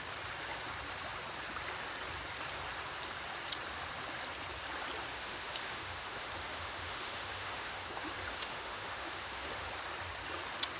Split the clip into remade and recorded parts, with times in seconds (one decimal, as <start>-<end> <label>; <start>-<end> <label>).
0.0-5.1 recorded; 5.1-9.7 remade; 9.7-10.8 recorded